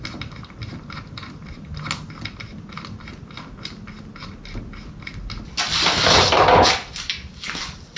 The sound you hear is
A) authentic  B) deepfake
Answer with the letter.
A